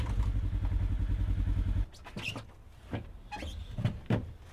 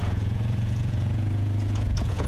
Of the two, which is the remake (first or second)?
second